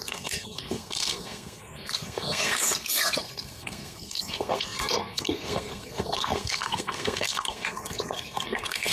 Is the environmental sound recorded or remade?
remade